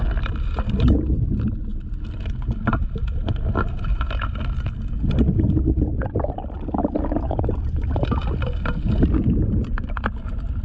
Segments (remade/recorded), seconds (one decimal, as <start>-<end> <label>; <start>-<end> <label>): 0.0-10.6 recorded